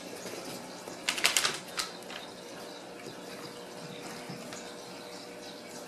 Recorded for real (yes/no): yes